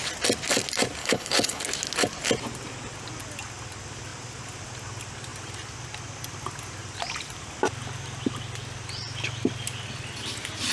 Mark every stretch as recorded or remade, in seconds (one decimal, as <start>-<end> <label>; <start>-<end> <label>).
0.0-1.0 recorded; 1.0-1.6 remade; 1.6-10.7 recorded